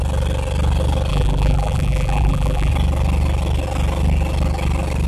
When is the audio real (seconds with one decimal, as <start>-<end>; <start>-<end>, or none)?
0.0-1.1; 2.7-5.1